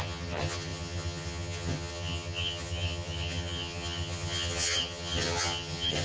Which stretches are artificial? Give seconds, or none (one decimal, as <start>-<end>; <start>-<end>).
0.0-6.0